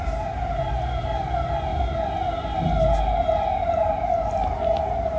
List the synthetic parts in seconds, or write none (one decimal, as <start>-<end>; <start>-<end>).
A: none